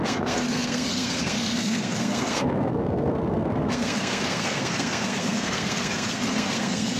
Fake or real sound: fake